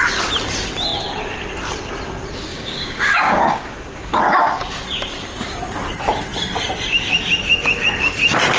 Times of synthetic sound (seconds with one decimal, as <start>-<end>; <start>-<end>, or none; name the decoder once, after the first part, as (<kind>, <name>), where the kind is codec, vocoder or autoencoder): 2.5-4.2 (codec, DAC)